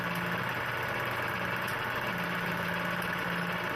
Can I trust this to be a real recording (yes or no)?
yes